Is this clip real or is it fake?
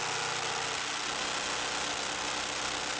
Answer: real